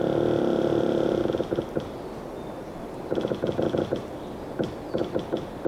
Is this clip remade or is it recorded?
recorded